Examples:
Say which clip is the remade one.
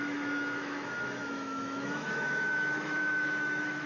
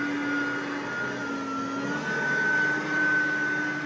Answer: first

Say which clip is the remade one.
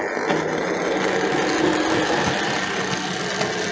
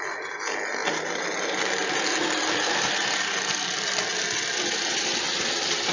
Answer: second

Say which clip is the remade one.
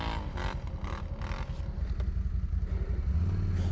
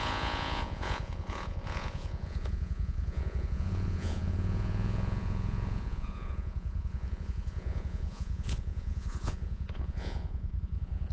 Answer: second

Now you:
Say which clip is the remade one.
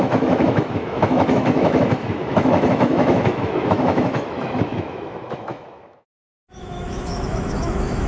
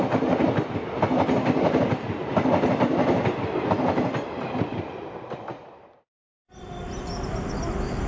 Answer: first